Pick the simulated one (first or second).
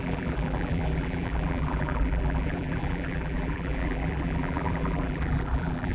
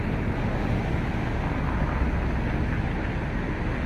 first